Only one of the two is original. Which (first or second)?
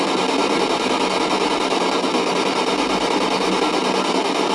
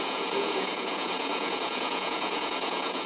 first